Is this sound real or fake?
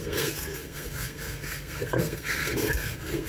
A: fake